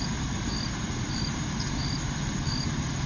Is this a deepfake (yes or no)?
no